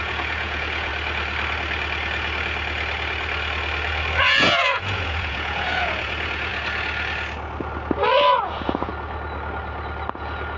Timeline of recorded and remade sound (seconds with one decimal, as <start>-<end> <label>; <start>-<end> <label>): 0.0-0.9 remade; 0.9-4.2 recorded; 4.2-6.5 remade; 6.5-8.4 recorded; 8.4-8.9 remade; 8.9-10.1 recorded; 10.1-10.6 remade